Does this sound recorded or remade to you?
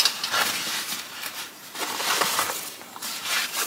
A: remade